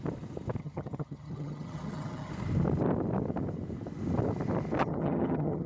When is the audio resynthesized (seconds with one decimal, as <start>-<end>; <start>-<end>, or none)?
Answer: 0.6-2.3; 4.8-5.7